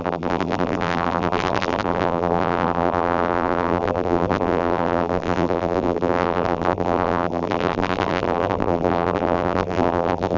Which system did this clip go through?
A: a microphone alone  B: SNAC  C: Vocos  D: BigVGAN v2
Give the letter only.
D